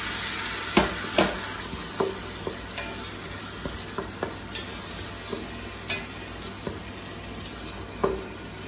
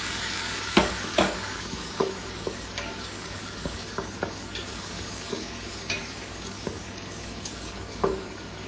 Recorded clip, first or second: first